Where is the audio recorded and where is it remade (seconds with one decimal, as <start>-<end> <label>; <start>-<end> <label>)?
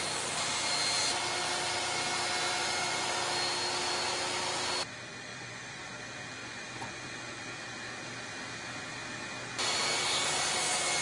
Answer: 0.0-2.6 recorded; 2.6-3.1 remade; 3.1-5.3 recorded; 5.3-5.9 remade; 5.9-6.4 recorded; 6.4-7.4 remade; 7.4-11.0 recorded